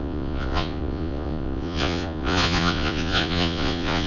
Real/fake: fake